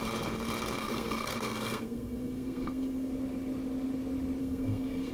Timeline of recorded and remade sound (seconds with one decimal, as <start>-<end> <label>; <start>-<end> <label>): 0.0-0.8 recorded; 0.8-3.1 remade; 3.1-4.4 recorded; 4.4-5.1 remade